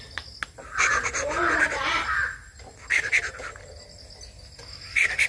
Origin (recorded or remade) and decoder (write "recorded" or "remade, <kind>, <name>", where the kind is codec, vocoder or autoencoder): recorded